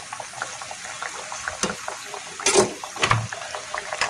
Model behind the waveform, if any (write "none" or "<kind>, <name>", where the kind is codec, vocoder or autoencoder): none